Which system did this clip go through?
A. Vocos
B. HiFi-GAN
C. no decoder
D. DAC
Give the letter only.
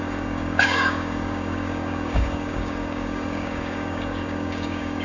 D